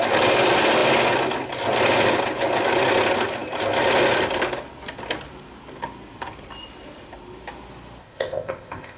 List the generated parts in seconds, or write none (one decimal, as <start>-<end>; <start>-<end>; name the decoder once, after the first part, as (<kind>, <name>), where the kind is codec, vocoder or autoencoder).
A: 8.0-9.0 (codec, ZipCodec)